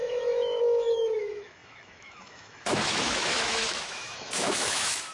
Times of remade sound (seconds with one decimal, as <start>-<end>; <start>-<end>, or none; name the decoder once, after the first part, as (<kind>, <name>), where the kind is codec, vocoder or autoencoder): 0.0-5.1 (autoencoder, DAC-VAE)